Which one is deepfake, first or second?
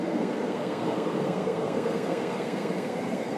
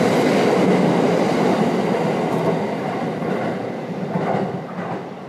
first